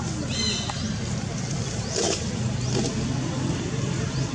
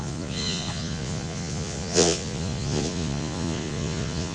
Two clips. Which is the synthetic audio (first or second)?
second